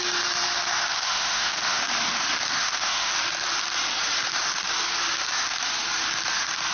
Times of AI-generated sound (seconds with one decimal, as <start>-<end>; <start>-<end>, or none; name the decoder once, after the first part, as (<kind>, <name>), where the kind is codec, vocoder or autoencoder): 0.9-1.8 (autoencoder, DAC-VAE); 2.6-3.1